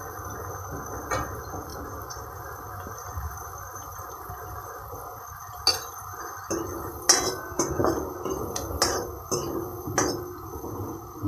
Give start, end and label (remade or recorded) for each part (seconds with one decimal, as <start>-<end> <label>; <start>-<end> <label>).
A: 0.0-1.7 recorded; 1.7-4.1 remade; 4.1-11.3 recorded